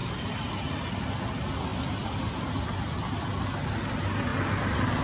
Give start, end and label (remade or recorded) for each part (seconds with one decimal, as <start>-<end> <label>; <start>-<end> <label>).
0.0-5.0 recorded